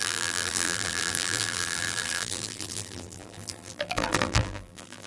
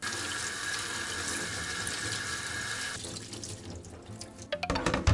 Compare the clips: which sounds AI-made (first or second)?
first